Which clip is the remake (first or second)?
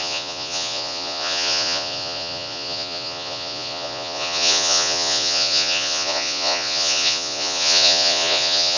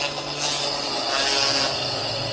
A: first